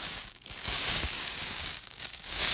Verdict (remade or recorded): remade